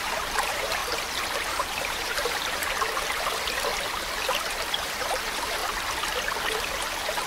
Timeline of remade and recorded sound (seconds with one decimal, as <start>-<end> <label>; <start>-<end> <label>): 0.0-0.8 remade; 0.8-1.5 recorded; 1.5-3.7 remade; 3.7-4.7 recorded; 4.7-5.6 remade; 5.6-7.3 recorded